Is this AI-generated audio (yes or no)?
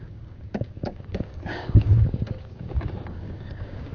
yes